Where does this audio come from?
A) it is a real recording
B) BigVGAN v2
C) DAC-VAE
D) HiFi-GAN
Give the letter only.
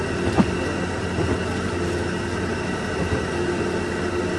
A